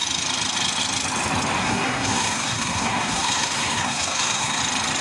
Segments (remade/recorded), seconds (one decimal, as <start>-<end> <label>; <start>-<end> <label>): 0.0-1.6 recorded; 1.6-4.6 remade; 4.6-5.0 recorded